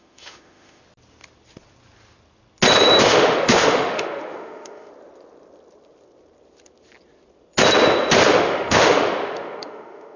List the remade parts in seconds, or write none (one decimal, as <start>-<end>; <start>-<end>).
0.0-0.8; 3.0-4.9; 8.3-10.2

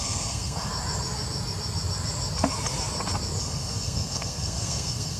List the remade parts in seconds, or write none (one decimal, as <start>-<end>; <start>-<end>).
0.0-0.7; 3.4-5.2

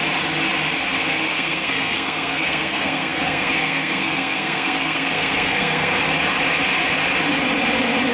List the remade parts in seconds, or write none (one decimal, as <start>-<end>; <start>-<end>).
1.0-5.9